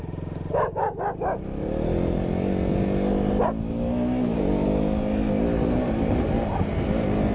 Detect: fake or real real